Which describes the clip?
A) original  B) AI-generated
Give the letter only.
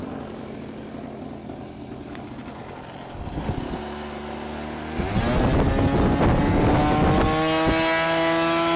A